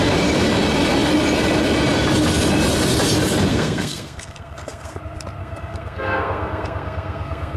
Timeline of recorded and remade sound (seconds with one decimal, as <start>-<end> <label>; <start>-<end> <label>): 0.0-3.5 recorded; 3.5-5.0 remade; 5.0-5.4 recorded; 5.4-7.6 remade